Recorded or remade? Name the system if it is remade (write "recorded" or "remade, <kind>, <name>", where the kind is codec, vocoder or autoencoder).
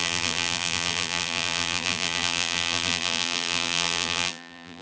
remade, vocoder, BigVGAN v2